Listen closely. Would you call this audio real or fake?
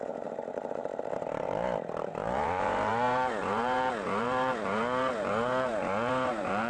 fake